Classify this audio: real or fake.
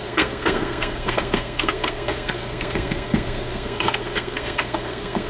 fake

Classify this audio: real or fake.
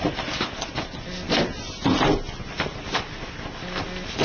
real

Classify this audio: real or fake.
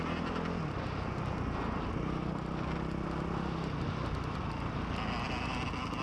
real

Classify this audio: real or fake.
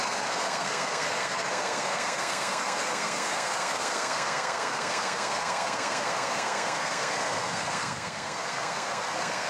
fake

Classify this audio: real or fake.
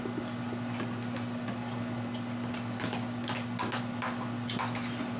real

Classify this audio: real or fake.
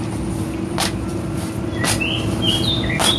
real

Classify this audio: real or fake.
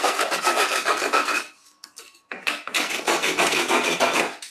fake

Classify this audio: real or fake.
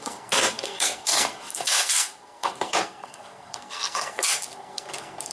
fake